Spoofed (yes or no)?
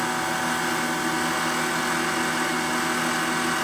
no